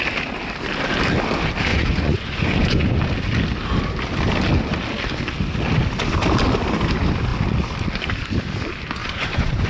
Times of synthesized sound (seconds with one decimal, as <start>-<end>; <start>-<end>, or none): 1.7-3.0; 9.0-9.7